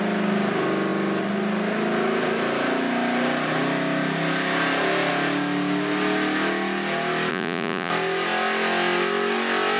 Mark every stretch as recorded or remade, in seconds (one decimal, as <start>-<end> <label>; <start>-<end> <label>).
0.0-7.3 recorded; 7.3-7.9 remade; 7.9-9.8 recorded